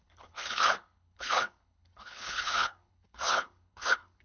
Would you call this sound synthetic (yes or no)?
yes